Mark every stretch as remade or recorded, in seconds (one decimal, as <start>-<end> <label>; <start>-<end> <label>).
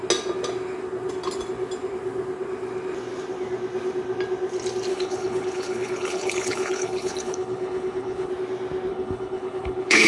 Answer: 0.0-4.9 recorded; 4.9-8.3 remade; 8.3-8.9 recorded; 8.9-10.1 remade